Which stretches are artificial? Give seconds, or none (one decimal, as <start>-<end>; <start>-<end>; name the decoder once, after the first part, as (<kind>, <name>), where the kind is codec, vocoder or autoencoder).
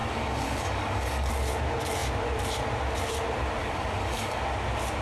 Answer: 0.0-1.3 (codec, DAC); 3.6-4.4